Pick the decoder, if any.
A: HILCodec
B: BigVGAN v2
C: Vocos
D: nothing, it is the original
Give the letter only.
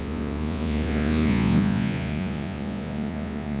C